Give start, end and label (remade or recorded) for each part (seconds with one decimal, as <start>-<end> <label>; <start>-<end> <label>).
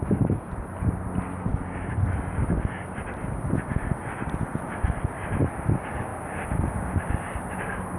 0.0-4.5 recorded; 4.5-5.4 remade; 5.4-8.0 recorded